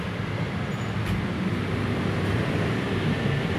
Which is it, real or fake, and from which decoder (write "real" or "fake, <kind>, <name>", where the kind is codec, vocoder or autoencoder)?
real